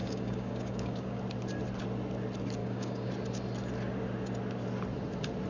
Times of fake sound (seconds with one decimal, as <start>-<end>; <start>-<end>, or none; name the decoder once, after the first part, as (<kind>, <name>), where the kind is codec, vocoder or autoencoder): 0.0-1.2 (codec, DAC); 2.6-3.1